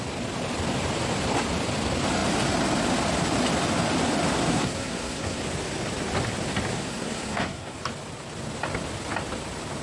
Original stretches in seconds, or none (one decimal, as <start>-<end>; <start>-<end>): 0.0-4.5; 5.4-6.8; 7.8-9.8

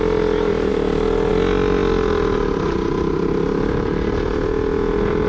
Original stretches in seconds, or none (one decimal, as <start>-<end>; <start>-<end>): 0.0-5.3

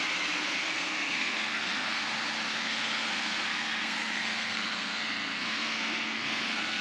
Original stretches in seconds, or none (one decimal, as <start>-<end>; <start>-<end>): 0.0-0.6; 2.0-2.5